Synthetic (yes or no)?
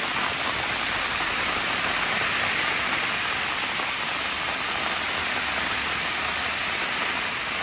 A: no